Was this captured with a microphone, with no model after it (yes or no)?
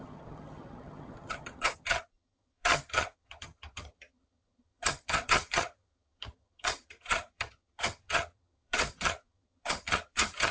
no